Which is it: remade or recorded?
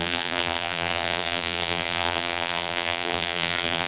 remade